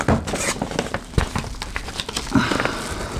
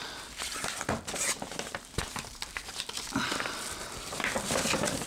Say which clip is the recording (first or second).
first